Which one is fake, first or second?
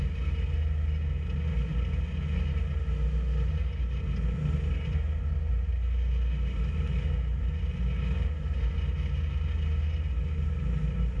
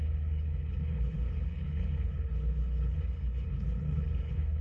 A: second